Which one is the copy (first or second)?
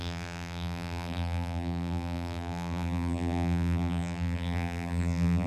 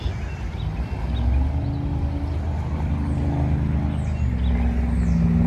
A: first